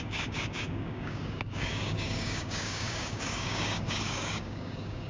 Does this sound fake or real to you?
fake